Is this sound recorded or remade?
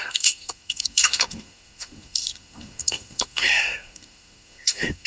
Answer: remade